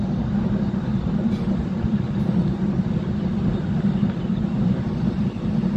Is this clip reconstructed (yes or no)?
no